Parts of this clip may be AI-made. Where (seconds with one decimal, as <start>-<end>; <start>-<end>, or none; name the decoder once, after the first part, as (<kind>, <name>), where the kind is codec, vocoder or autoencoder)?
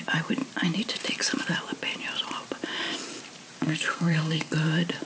3.6-4.5 (codec, SNAC)